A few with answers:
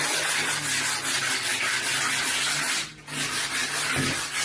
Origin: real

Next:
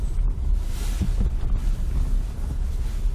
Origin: real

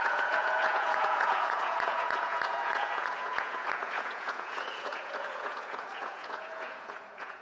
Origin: fake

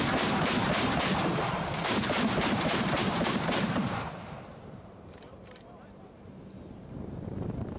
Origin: fake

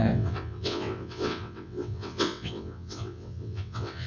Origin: fake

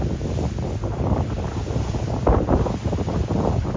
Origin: real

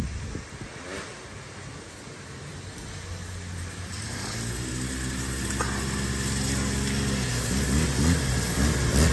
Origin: real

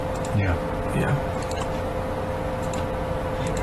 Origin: real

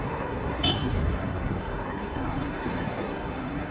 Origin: fake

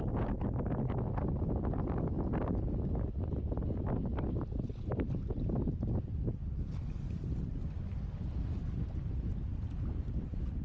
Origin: real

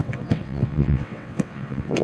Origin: fake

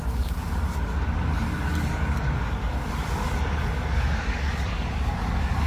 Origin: fake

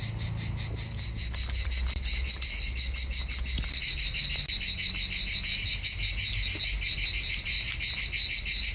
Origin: real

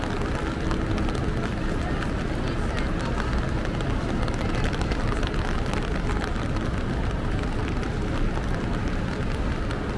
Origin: real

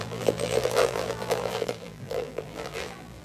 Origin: fake